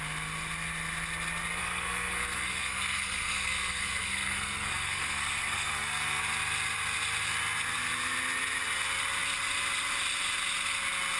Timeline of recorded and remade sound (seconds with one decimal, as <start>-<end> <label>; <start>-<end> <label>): 0.0-1.6 recorded; 1.6-6.2 remade; 6.2-11.2 recorded

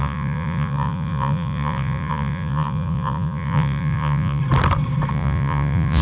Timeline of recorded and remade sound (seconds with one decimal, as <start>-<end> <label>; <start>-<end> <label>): 0.0-4.4 remade; 4.4-5.1 recorded; 5.1-6.0 remade

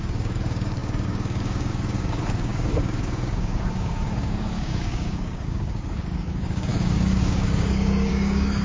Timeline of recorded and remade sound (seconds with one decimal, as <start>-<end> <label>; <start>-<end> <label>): 0.0-8.6 remade

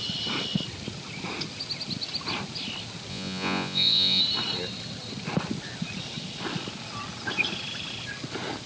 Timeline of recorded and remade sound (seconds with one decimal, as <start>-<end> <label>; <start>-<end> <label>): 0.0-3.1 recorded; 3.1-4.2 remade; 4.2-8.7 recorded

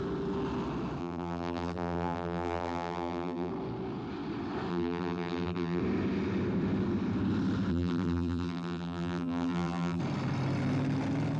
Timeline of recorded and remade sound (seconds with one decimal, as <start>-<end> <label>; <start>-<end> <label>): 0.0-1.0 recorded; 1.0-3.5 remade; 3.5-4.7 recorded; 4.7-5.8 remade; 5.8-7.7 recorded; 7.7-10.0 remade; 10.0-11.4 recorded

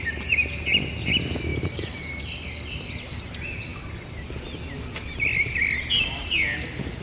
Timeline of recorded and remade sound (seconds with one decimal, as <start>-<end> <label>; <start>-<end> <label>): 0.0-1.5 recorded; 1.5-2.2 remade; 2.2-7.0 recorded

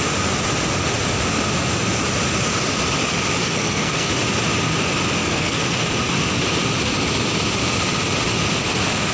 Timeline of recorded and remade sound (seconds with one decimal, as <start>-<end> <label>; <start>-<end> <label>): 0.0-3.4 recorded; 3.4-4.1 remade; 4.1-5.2 recorded; 5.2-5.9 remade; 5.9-9.1 recorded